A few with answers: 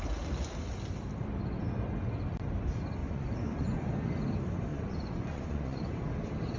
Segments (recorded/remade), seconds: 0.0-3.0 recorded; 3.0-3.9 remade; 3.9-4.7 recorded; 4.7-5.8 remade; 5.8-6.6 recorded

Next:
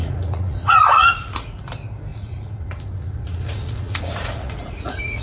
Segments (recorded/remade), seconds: 0.0-1.6 remade; 1.6-2.1 recorded; 2.1-5.2 remade

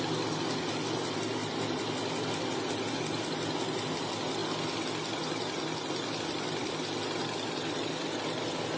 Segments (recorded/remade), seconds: 0.0-8.8 recorded

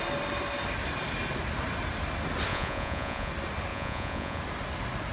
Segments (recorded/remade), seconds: 0.0-2.5 recorded; 2.5-3.3 remade; 3.3-3.7 recorded; 3.7-4.4 remade; 4.4-5.1 recorded

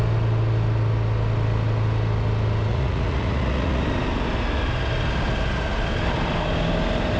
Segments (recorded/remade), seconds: 0.0-2.7 recorded; 2.7-3.8 remade; 3.8-7.2 recorded